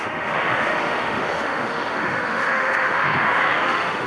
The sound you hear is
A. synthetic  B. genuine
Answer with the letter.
A